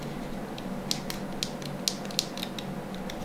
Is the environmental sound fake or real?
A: real